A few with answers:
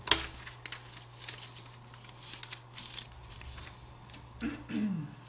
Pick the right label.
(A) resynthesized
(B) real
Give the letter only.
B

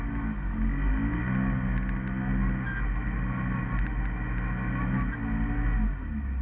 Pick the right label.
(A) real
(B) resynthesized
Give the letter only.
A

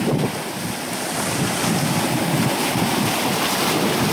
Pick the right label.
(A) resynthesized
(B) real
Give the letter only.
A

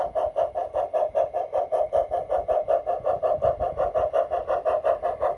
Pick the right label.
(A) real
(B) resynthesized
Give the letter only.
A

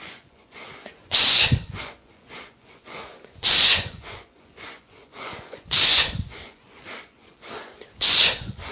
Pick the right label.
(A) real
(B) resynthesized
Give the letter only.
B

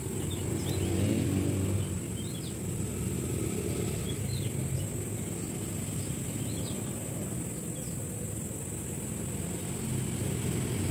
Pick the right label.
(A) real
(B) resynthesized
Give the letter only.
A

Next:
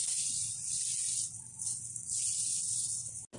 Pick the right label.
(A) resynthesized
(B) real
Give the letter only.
B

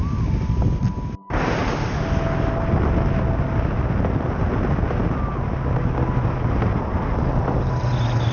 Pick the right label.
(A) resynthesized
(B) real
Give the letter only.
B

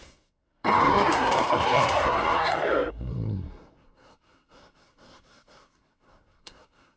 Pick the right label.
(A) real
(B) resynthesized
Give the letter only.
B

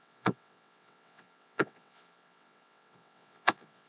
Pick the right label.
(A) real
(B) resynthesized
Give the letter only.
B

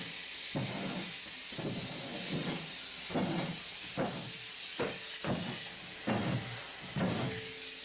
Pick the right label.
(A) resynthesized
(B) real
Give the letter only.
B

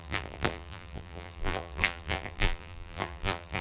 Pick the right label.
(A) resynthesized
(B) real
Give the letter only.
A